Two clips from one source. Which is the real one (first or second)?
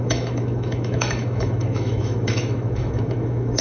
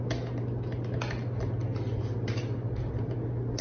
second